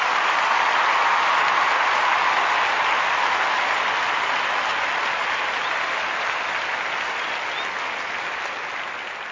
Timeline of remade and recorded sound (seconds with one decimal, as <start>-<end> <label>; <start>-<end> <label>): 0.0-9.3 recorded